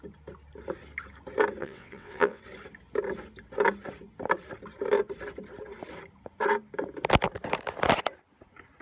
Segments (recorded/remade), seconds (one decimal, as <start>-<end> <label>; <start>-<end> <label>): 0.0-1.6 recorded; 1.6-2.4 remade; 2.4-8.8 recorded